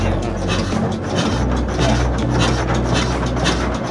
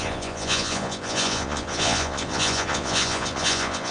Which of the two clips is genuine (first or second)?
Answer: first